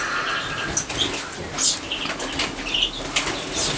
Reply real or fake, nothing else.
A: real